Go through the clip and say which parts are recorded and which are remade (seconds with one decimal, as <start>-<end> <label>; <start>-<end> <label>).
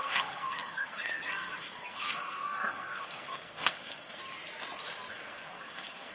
0.0-4.2 remade; 4.2-5.1 recorded; 5.1-6.1 remade